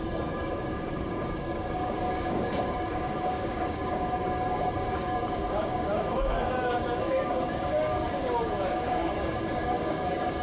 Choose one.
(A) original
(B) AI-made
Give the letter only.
B